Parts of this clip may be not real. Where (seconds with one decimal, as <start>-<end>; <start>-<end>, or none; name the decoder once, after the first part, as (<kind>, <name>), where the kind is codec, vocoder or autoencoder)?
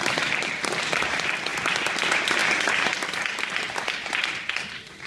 none